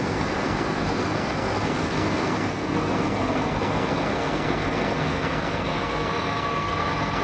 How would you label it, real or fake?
fake